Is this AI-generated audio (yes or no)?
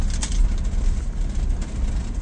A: no